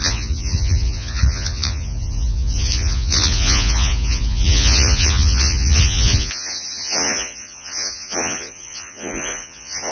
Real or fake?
fake